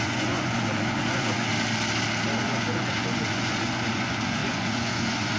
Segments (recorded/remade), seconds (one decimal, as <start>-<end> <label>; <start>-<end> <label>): 0.0-1.5 remade; 1.5-2.4 recorded; 2.4-5.4 remade